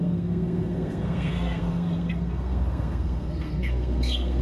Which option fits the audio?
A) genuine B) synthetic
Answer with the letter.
B